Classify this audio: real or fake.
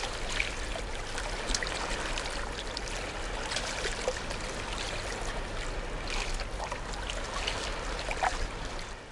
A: real